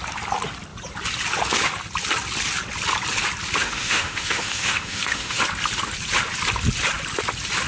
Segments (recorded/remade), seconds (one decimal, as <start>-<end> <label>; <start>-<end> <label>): 0.0-3.6 recorded; 3.6-5.4 remade; 5.4-7.7 recorded